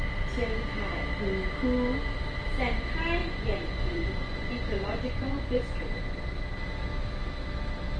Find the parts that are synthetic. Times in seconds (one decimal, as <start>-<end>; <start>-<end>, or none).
3.2-6.2